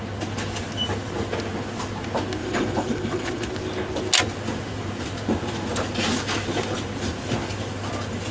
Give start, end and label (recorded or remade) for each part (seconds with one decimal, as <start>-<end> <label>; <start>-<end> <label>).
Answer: 0.0-2.4 recorded; 2.4-3.5 remade; 3.5-8.3 recorded